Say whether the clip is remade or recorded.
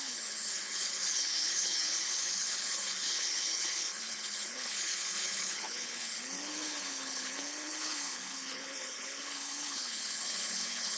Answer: remade